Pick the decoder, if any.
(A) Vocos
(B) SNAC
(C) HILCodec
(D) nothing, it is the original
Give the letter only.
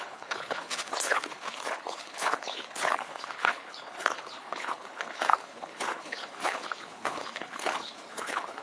C